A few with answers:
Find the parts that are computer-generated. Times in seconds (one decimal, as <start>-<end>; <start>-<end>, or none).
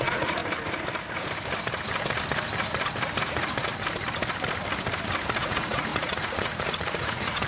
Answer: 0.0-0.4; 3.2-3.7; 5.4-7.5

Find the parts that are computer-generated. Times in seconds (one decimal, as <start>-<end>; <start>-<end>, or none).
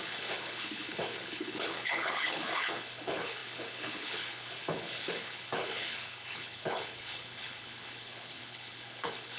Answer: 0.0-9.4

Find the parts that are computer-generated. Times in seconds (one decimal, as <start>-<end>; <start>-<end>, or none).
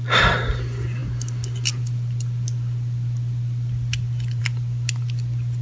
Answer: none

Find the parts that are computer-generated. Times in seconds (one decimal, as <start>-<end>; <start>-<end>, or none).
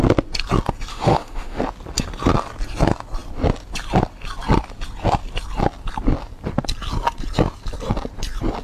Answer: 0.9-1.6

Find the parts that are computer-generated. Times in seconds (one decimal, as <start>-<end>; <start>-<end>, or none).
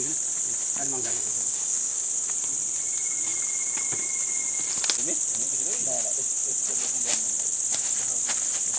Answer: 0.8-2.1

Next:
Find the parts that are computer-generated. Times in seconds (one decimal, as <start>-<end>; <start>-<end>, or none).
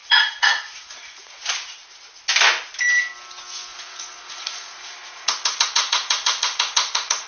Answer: 0.0-1.4; 3.7-7.3